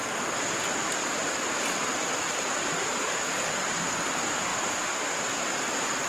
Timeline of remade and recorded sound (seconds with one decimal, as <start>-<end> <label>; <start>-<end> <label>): 0.0-2.1 recorded; 2.1-4.5 remade; 4.5-5.4 recorded; 5.4-6.1 remade